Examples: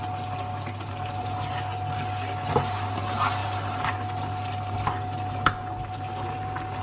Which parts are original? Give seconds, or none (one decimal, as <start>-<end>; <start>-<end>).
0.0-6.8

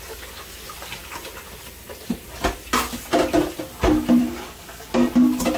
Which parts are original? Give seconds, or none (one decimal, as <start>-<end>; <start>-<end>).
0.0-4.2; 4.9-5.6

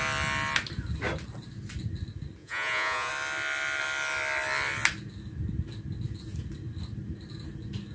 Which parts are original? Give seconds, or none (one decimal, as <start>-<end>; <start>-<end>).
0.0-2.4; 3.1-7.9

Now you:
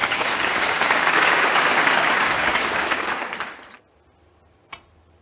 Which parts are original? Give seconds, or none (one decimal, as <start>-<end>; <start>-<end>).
3.1-5.2

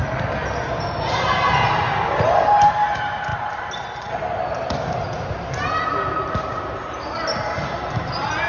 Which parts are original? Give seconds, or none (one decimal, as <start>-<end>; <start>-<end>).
0.0-8.5

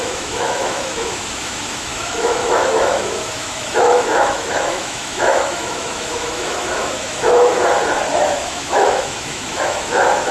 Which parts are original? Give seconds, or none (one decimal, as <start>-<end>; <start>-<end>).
7.5-8.2

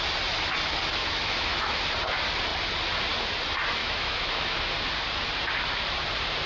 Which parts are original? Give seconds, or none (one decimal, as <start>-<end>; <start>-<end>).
0.0-1.0; 1.8-3.8; 4.7-6.5